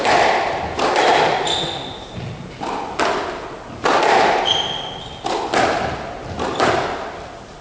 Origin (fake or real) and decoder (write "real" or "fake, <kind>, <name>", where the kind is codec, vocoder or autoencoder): real